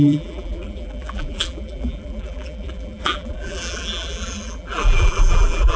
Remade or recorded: remade